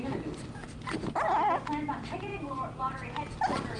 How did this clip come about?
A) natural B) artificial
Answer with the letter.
A